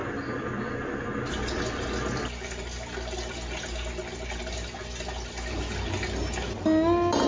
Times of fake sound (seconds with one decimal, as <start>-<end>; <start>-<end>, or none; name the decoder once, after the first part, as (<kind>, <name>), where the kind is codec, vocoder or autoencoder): none